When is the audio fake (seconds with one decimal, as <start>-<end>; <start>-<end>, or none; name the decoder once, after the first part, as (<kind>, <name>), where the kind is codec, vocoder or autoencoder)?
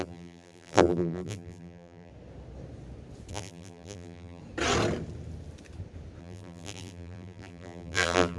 0.0-2.1 (vocoder, BigVGAN v2); 3.3-4.4; 6.2-8.4